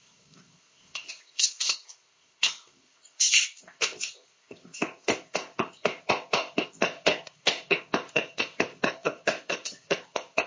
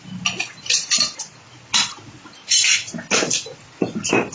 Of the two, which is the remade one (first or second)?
first